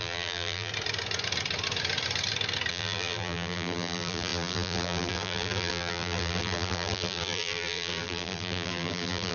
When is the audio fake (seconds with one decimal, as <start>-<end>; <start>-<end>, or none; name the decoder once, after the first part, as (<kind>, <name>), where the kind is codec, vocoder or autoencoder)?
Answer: 0.0-0.7 (vocoder, BigVGAN v2); 2.7-9.3